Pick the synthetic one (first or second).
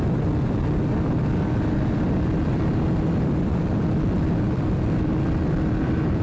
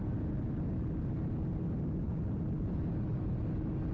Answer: first